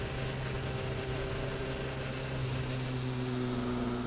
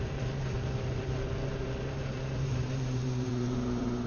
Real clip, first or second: first